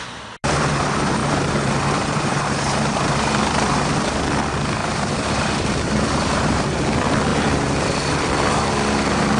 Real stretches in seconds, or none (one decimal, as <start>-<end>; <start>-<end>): 0.0-1.2; 3.4-4.8; 6.6-7.3